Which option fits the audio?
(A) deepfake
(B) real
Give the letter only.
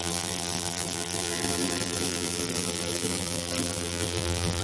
A